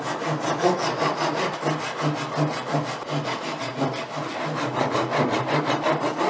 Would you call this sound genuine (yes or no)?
yes